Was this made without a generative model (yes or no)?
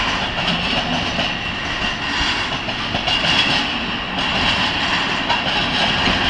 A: yes